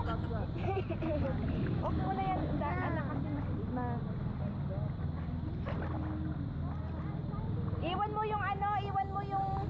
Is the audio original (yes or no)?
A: yes